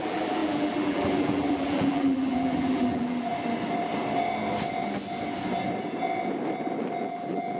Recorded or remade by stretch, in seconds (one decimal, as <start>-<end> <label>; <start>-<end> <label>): 0.0-3.3 remade; 3.3-7.0 recorded; 7.0-7.6 remade